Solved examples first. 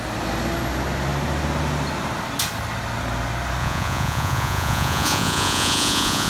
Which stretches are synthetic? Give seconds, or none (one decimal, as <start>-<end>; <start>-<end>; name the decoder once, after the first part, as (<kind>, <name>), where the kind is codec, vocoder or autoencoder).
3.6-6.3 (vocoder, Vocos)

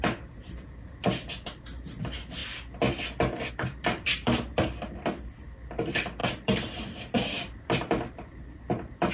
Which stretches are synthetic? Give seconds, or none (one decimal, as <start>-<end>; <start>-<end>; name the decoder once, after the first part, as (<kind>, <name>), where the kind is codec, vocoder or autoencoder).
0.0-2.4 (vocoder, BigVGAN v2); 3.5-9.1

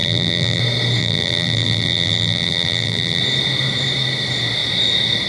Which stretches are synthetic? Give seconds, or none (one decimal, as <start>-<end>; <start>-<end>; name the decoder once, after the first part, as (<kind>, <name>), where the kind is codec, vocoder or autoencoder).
0.0-0.6 (vocoder, BigVGAN v2); 1.0-3.2

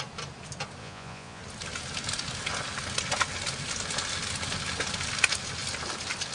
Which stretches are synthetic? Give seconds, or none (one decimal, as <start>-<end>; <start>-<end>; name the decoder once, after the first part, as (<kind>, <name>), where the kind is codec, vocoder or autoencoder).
0.8-1.4 (vocoder, Vocos)

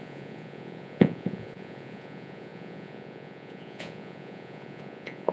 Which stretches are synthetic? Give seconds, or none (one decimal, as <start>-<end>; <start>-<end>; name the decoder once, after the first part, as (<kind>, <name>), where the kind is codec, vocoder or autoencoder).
0.0-5.3 (vocoder, Vocos)